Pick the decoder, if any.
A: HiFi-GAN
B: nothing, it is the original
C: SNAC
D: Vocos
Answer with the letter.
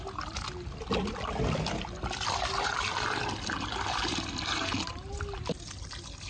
B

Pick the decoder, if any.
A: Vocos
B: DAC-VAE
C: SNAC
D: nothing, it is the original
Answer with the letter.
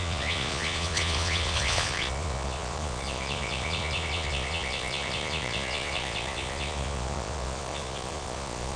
A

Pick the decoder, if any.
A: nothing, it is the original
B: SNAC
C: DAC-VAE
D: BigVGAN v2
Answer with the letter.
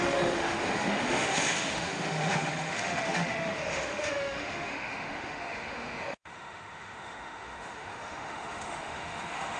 C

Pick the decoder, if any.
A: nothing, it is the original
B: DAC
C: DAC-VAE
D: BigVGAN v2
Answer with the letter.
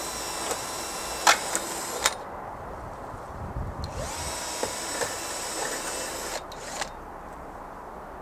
A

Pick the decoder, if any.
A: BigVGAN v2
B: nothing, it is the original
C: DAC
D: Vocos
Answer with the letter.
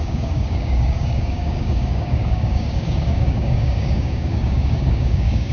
C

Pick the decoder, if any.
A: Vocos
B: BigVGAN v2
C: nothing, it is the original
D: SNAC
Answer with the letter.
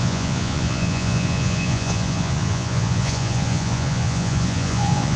A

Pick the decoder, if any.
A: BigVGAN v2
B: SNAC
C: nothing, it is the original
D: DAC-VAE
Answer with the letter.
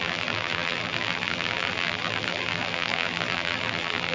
A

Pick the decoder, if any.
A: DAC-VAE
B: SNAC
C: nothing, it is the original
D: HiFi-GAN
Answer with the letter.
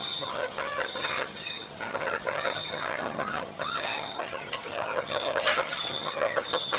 D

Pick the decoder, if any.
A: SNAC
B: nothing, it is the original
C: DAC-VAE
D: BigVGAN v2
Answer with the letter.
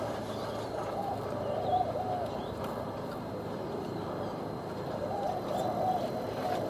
D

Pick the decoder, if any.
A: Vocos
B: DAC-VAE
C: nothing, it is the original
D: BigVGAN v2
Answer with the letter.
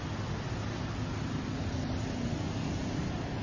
C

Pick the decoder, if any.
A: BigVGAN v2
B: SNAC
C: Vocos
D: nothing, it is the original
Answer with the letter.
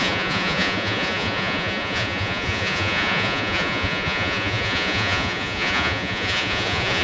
C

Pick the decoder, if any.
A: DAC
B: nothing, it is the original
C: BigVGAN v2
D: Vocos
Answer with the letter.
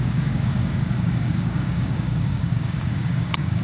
A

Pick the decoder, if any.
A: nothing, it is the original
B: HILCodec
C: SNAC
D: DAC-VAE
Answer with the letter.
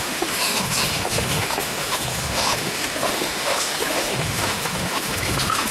D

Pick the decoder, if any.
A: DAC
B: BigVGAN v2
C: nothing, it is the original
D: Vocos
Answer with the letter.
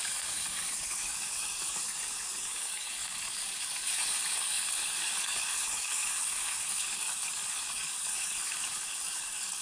A